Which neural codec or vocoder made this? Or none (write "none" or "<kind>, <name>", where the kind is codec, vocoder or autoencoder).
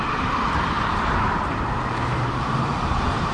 vocoder, BigVGAN v2